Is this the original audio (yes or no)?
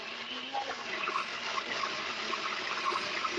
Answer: yes